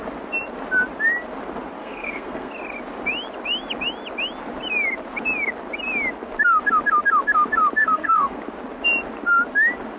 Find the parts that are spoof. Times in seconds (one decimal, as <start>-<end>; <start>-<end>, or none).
1.8-2.5; 7.8-8.4